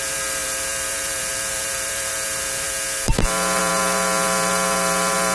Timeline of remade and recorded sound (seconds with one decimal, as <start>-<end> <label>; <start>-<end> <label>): 0.0-5.3 remade